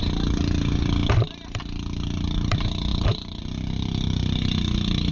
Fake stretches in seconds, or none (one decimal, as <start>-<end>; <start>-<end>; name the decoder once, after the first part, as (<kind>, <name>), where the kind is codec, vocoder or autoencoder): 2.9-3.4 (vocoder, BigVGAN v2); 4.2-5.1